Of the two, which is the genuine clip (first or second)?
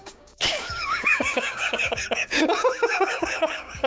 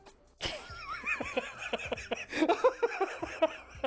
second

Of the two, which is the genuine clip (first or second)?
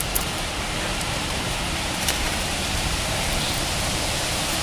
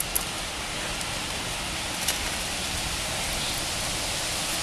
second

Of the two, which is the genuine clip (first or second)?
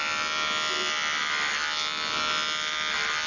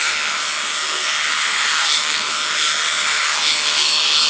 first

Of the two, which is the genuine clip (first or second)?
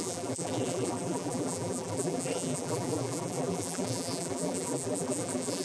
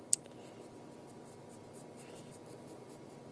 second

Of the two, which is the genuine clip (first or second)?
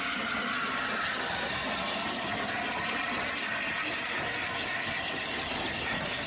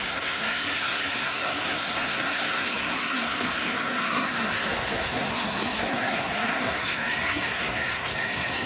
first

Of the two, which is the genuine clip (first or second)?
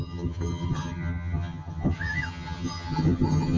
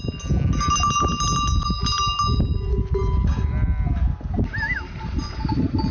second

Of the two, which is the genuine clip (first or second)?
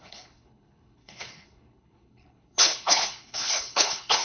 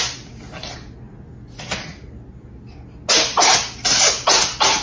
second